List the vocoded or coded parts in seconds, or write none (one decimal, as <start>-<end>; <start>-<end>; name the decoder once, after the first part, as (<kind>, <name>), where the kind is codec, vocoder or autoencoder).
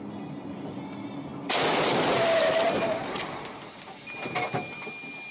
none